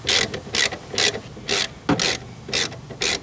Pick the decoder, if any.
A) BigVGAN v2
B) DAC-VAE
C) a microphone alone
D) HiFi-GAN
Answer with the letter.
C